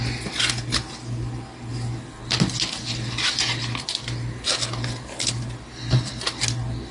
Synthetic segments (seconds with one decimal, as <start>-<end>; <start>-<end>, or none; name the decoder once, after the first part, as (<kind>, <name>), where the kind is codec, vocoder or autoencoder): none